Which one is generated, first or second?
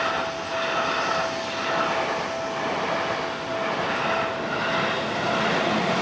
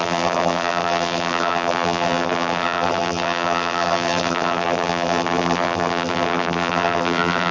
second